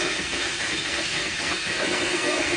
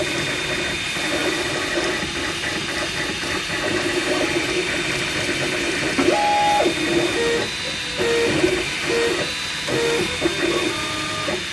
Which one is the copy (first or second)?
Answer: first